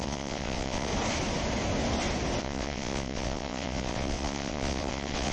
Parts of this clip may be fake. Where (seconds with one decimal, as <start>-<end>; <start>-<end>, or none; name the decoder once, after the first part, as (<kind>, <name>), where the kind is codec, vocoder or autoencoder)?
0.0-0.9 (vocoder, WaveNeXt); 2.4-5.3